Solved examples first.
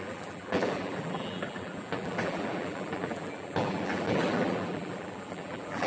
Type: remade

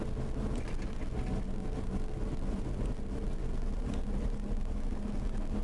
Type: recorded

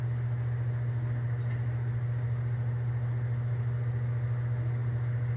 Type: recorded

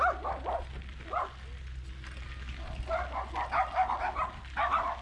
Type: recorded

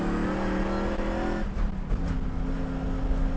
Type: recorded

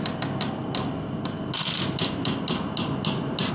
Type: recorded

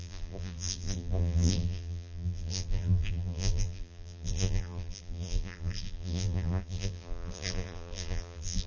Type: remade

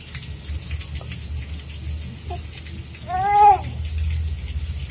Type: recorded